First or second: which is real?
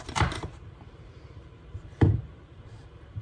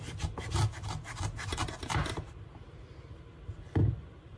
second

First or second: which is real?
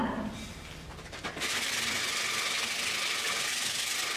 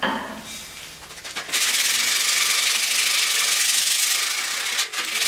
second